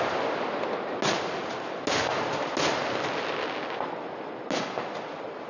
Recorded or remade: recorded